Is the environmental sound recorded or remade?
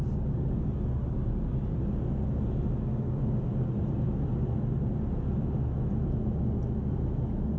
recorded